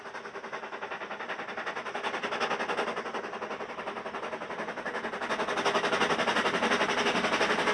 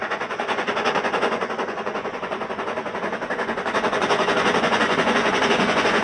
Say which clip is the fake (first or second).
second